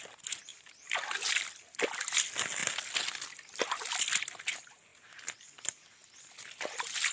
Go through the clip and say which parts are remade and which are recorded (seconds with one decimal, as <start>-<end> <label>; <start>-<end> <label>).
0.0-7.1 recorded